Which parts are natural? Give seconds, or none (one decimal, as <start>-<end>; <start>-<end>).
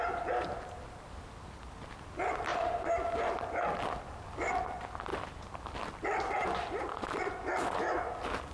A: 0.0-8.5